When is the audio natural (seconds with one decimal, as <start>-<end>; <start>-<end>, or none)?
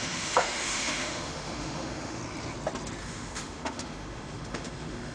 2.2-3.0